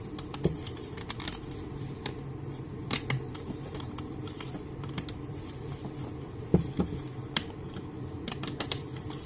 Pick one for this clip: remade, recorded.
remade